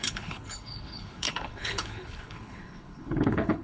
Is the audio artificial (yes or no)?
yes